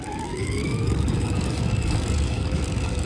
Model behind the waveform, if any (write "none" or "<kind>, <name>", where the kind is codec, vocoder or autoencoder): codec, DAC